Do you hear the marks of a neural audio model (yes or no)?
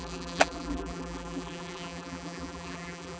yes